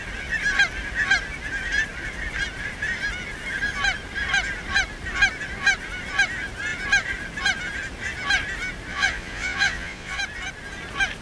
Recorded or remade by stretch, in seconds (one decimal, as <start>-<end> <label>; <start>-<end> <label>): 0.0-8.9 recorded; 8.9-10.2 remade; 10.2-11.2 recorded